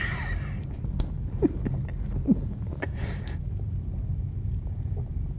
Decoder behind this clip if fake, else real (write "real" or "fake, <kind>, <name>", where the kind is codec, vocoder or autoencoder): fake, vocoder, BigVGAN v2